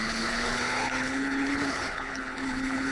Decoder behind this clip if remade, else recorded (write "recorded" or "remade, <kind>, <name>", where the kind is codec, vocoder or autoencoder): remade, codec, HILCodec